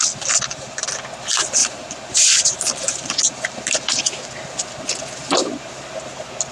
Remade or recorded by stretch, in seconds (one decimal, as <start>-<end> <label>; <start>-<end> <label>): 0.0-0.9 remade; 0.9-1.6 recorded; 1.6-4.0 remade; 4.0-5.2 recorded; 5.2-5.8 remade; 5.8-6.5 recorded